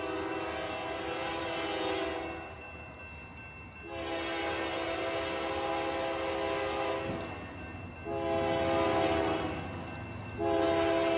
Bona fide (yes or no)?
yes